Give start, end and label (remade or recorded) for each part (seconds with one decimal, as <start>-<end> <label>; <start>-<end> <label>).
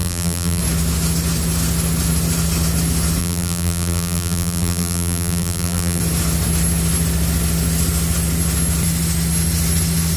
0.0-0.6 remade; 0.6-3.2 recorded; 3.2-6.0 remade; 6.0-10.2 recorded